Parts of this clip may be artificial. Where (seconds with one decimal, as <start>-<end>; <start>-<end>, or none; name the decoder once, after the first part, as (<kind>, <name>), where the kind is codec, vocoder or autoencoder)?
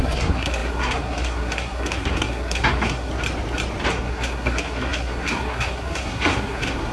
0.0-3.1 (codec, SNAC); 3.9-6.9